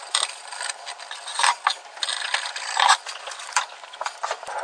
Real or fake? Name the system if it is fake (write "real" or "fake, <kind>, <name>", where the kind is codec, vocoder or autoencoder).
real